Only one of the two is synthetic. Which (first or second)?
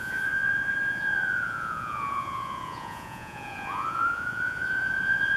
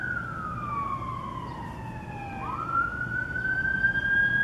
first